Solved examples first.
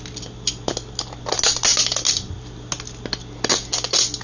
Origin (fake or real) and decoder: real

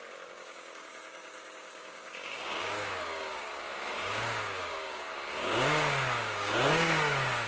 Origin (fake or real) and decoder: fake, codec, DAC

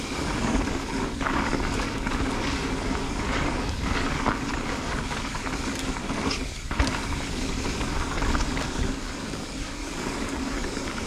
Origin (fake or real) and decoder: fake, codec, DAC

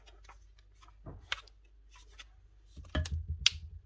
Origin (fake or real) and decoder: real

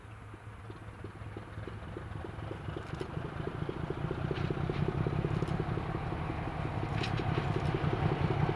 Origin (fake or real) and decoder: real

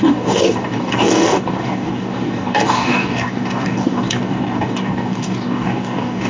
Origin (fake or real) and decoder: fake, codec, DAC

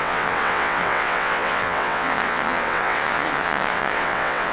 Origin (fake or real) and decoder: fake, vocoder, WaveNeXt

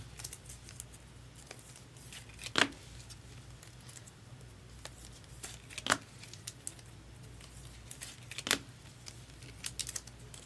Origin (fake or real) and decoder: real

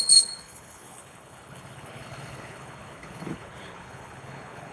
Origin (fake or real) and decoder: fake, codec, HILCodec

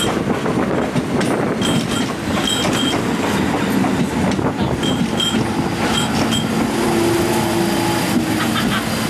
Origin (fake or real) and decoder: real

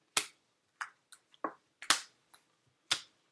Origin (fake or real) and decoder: real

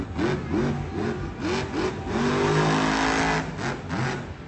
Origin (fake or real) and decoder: real